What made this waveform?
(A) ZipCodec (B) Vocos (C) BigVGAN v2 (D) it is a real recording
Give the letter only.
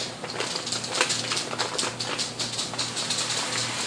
D